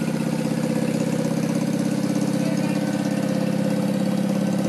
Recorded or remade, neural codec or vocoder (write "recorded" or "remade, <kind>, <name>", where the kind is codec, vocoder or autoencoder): recorded